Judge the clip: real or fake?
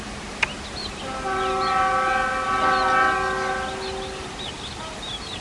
real